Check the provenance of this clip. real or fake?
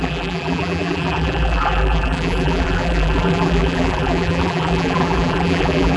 fake